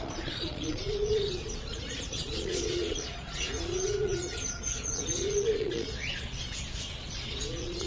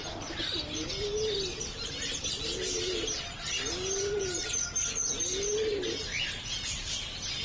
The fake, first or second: first